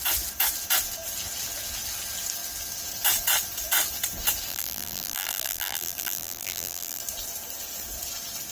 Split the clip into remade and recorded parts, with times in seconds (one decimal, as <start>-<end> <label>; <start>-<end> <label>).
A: 0.0-4.5 recorded; 4.5-7.0 remade; 7.0-8.5 recorded